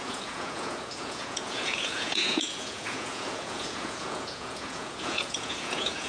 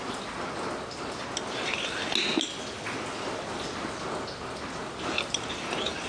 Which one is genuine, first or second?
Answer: second